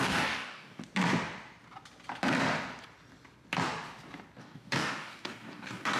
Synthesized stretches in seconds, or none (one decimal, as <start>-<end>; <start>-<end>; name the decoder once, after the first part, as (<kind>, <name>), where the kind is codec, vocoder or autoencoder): 0.0-0.8 (codec, DAC); 4.4-6.0